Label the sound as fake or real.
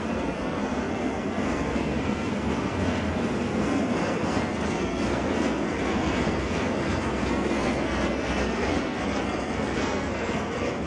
fake